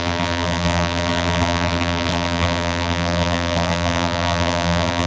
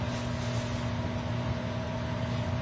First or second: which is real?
second